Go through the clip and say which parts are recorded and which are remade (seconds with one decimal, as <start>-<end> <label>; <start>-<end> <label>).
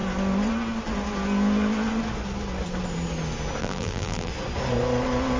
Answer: 0.0-3.6 recorded; 3.6-4.3 remade; 4.3-5.4 recorded